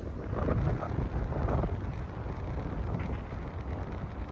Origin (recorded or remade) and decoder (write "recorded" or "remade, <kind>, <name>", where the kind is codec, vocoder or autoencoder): recorded